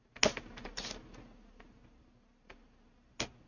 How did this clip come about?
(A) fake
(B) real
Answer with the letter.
B